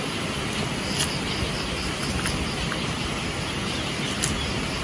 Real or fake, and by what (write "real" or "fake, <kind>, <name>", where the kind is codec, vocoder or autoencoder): real